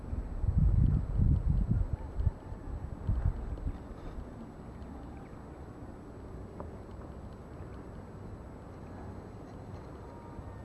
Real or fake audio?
real